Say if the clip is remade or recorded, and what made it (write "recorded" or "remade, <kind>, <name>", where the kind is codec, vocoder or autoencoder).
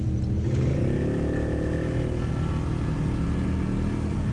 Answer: recorded